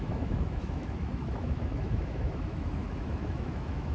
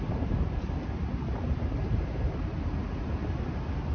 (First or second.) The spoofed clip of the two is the first